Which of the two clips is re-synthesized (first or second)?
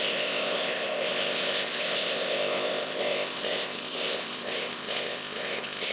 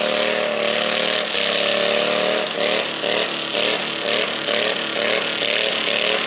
first